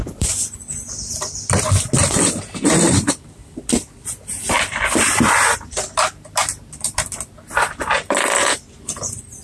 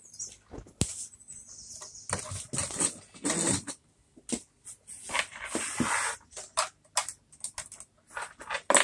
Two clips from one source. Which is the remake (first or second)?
first